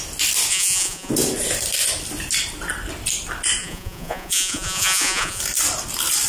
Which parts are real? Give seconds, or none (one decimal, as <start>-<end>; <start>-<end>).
0.0-0.5; 1.1-3.6; 5.4-6.3